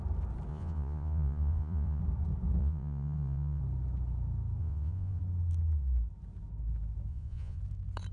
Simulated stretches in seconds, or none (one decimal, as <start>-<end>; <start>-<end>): 0.5-2.0; 2.6-3.6; 4.6-5.2; 7.1-7.6